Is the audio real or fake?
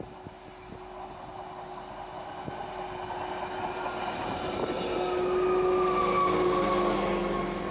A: real